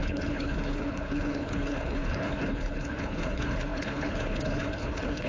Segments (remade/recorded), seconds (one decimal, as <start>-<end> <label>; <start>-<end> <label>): 0.0-5.3 remade